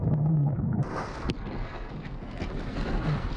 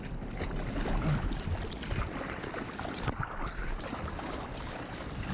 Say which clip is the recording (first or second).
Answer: second